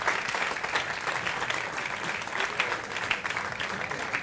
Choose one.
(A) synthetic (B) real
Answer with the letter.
B